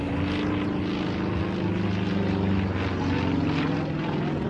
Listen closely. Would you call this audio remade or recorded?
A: recorded